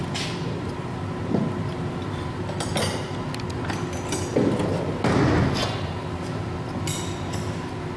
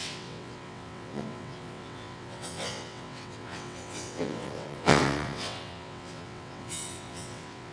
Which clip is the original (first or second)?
first